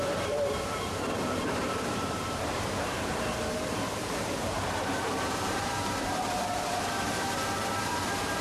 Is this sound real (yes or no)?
no